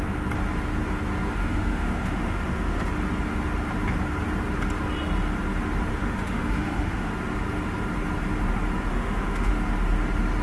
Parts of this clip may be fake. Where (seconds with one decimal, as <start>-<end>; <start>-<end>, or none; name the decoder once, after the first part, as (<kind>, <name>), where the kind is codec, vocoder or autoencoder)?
1.3-2.9 (autoencoder, DAC-VAE); 5.9-7.1; 8.9-9.5